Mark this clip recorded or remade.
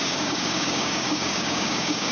remade